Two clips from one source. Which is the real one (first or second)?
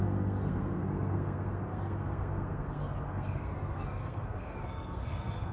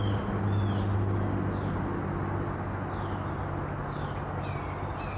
second